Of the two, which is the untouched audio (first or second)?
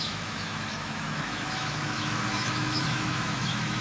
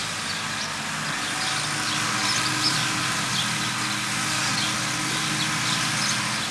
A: second